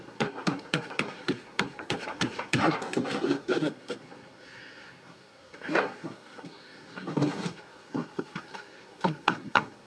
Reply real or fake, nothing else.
fake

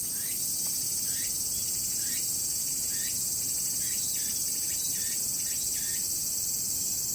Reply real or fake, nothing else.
real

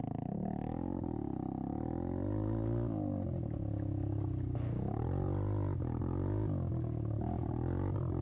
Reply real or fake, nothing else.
real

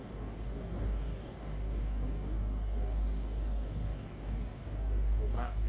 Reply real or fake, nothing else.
fake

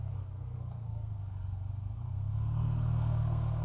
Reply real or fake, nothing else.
fake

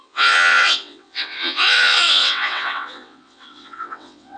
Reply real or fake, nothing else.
fake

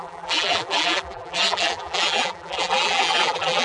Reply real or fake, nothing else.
fake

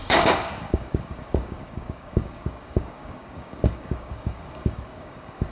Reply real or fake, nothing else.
fake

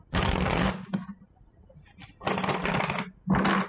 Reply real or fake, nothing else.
real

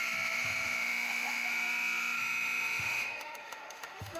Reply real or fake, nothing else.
fake